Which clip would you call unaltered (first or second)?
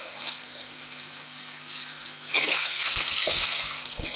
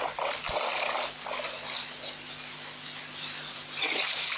second